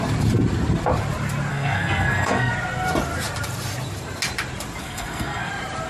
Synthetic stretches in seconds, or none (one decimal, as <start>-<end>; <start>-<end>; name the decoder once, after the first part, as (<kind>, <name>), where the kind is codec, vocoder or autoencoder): 1.5-2.5 (codec, SNAC); 4.8-5.5